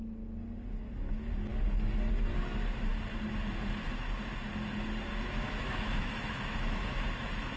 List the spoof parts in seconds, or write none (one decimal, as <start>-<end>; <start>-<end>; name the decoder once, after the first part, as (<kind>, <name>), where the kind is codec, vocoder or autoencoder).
5.1-7.6 (autoencoder, DAC-VAE)